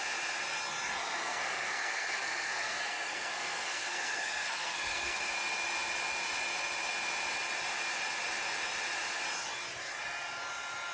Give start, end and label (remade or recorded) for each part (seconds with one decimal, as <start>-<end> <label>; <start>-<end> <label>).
0.0-1.2 recorded; 1.2-5.3 remade; 5.3-10.9 recorded